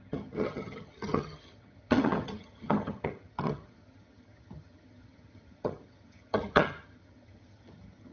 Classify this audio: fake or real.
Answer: fake